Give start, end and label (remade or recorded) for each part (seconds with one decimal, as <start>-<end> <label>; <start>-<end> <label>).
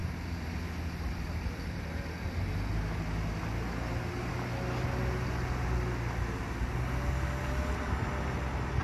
0.0-8.8 recorded